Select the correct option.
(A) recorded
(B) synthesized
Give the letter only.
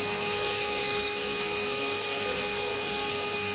B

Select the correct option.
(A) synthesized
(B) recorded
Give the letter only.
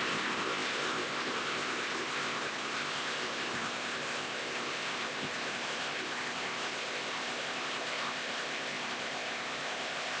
A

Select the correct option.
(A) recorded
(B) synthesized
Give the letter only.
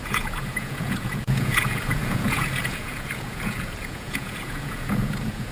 B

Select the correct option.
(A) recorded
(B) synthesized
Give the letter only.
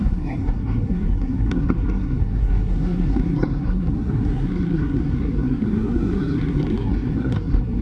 B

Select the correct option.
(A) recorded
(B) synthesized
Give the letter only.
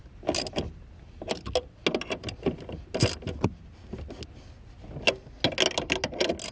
A